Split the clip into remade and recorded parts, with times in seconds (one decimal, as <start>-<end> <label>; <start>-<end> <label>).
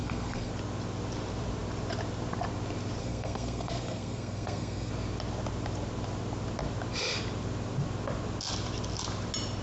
0.0-0.5 remade; 0.5-3.0 recorded; 3.0-4.9 remade; 4.9-9.6 recorded